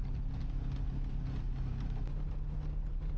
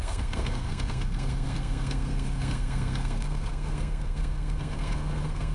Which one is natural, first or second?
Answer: first